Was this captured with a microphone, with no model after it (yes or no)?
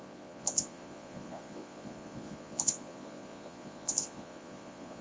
no